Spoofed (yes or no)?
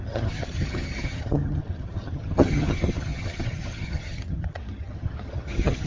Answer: yes